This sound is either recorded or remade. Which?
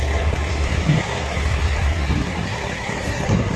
remade